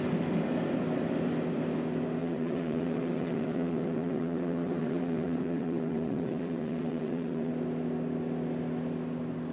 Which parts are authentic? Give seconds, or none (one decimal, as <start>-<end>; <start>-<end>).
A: 0.0-2.2; 7.5-9.5